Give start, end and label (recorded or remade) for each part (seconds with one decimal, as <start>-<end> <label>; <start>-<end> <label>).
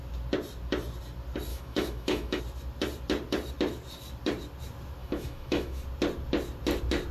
0.0-1.5 recorded; 1.5-2.4 remade; 2.4-5.0 recorded; 5.0-5.8 remade; 5.8-7.1 recorded